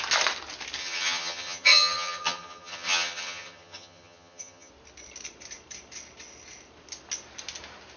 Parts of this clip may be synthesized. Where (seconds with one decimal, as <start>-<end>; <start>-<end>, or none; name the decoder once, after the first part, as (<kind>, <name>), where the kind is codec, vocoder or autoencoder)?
0.8-4.7 (vocoder, HiFi-GAN)